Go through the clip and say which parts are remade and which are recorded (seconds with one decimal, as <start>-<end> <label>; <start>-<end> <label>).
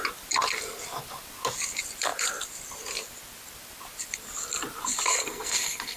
0.0-5.1 recorded; 5.1-6.0 remade